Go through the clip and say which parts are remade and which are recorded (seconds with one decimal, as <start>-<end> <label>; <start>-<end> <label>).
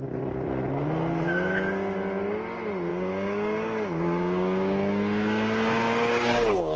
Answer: 0.0-2.9 recorded; 2.9-6.8 remade